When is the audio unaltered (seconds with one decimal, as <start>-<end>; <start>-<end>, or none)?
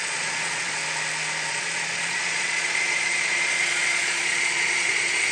0.8-1.5